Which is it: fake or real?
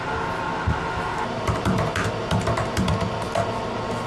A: real